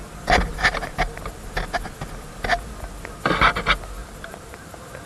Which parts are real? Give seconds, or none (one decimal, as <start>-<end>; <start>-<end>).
0.0-4.0

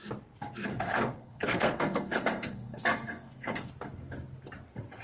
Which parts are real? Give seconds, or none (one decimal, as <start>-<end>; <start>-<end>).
0.0-0.7; 3.7-5.0

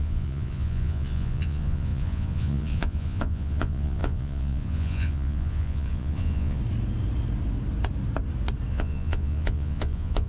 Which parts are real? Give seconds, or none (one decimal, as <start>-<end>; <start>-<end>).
6.6-8.7

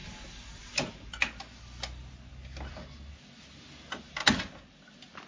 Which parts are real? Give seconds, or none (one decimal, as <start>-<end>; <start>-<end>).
0.0-5.3

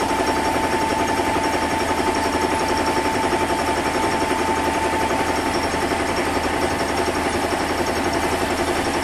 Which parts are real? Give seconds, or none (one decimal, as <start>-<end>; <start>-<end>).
0.0-9.0

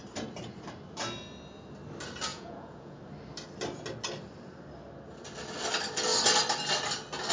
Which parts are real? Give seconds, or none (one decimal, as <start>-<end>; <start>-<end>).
0.0-2.3; 3.0-7.3

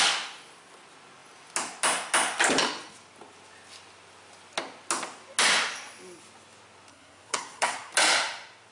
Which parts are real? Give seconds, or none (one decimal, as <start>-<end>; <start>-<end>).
0.0-6.9; 7.9-8.7